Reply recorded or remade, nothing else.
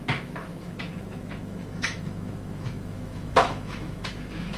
remade